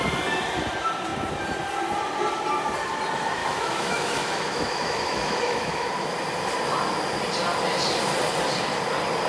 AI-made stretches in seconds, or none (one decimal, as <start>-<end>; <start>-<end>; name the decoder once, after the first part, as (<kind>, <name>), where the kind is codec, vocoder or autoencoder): 3.4-5.9 (autoencoder, DAC-VAE)